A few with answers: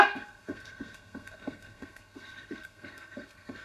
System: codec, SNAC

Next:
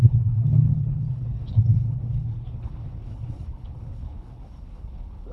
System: codec, HILCodec